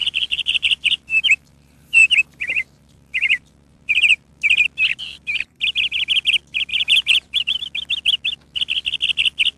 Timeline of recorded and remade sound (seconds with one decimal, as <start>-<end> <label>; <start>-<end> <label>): 0.0-4.3 remade; 4.3-4.9 recorded; 4.9-5.6 remade; 5.6-6.7 recorded; 6.7-7.6 remade; 7.6-9.6 recorded